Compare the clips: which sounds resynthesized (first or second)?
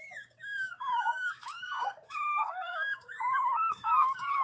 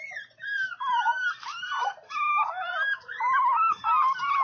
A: first